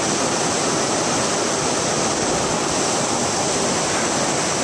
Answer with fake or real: real